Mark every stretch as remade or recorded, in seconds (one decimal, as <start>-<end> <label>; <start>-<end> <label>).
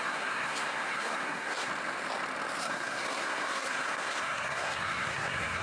0.0-1.7 remade; 1.7-2.6 recorded; 2.6-5.6 remade